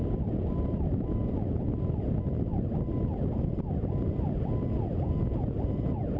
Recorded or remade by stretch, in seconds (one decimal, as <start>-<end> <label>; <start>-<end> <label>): 0.0-2.9 recorded; 2.9-3.6 remade; 3.6-6.2 recorded